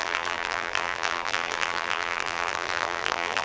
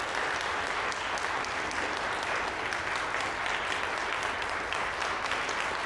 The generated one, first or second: first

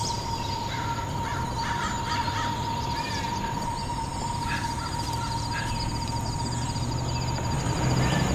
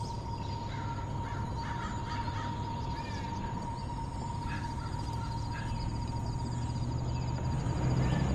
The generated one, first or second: first